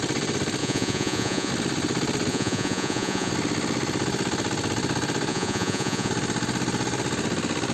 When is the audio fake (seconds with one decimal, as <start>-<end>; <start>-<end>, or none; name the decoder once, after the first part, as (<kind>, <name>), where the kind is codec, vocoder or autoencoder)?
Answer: 0.6-1.5 (vocoder, Vocos); 2.3-3.3; 5.3-6.1